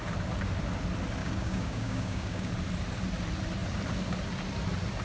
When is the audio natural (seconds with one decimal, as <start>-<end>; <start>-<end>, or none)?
0.0-1.2; 2.5-5.0